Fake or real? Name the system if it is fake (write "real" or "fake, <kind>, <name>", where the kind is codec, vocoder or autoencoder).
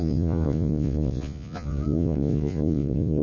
fake, vocoder, Vocos